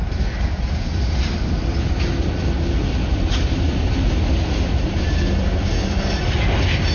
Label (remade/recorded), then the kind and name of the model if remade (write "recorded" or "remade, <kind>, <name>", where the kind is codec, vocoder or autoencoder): recorded